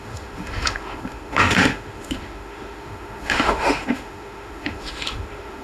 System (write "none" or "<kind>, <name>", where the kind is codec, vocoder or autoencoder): autoencoder, DAC-VAE